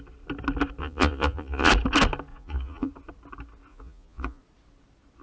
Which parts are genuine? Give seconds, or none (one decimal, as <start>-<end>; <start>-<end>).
0.0-0.8; 1.7-2.3; 2.9-3.7; 4.4-5.2